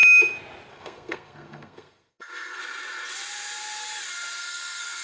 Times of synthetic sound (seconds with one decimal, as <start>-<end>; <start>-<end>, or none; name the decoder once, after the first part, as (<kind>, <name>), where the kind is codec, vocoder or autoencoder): 0.7-2.6 (codec, SNAC); 4.4-5.0